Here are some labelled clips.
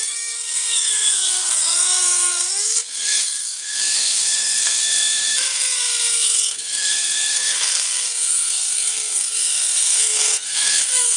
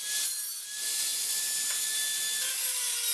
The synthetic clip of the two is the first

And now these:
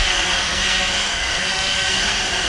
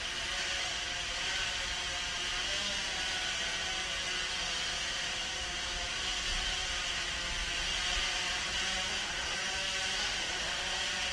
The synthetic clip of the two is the first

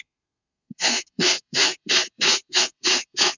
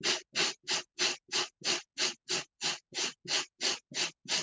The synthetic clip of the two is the first